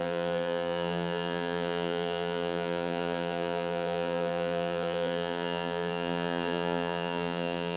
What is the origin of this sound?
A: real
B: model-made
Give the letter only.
B